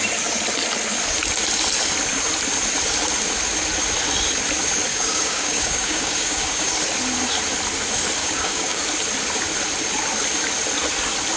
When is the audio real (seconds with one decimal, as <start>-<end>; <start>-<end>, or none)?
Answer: 0.0-4.9; 6.8-8.2; 8.8-11.4